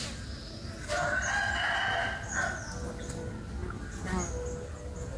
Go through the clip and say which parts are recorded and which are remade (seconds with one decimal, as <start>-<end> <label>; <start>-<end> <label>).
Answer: 0.0-5.2 recorded